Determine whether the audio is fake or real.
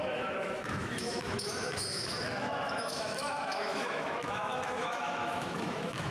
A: fake